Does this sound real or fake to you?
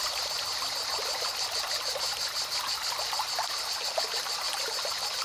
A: real